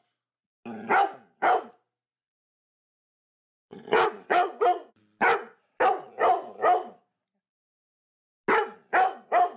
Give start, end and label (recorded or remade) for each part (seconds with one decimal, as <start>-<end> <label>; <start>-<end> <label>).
0.0-2.1 recorded; 2.1-5.0 remade; 5.0-9.6 recorded